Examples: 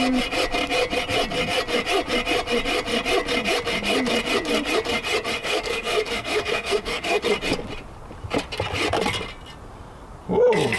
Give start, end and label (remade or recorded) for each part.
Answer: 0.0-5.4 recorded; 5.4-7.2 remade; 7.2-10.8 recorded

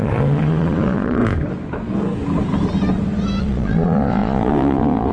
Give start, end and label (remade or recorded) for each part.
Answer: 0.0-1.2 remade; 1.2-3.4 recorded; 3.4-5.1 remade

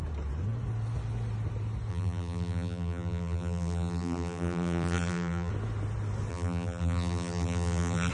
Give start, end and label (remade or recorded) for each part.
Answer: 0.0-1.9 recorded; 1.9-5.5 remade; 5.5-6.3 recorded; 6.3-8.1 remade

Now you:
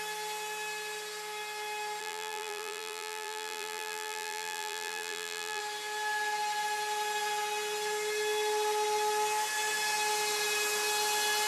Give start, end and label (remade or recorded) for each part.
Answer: 0.0-2.0 recorded; 2.0-5.6 remade; 5.6-11.5 recorded

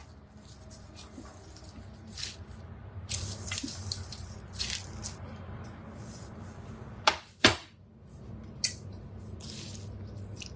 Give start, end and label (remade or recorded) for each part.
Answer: 0.0-10.6 recorded

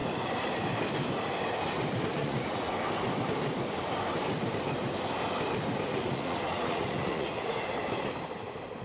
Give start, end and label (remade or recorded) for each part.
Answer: 0.0-2.2 recorded; 2.2-2.7 remade; 2.7-5.9 recorded; 5.9-7.7 remade; 7.7-8.8 recorded

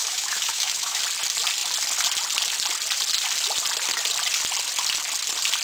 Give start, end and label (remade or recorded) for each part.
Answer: 0.0-1.0 remade; 1.0-5.6 recorded

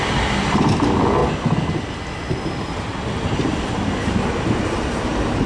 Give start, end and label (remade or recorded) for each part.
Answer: 0.0-5.5 recorded